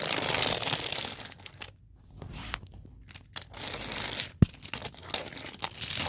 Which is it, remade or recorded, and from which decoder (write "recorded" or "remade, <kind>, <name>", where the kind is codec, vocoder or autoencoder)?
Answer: recorded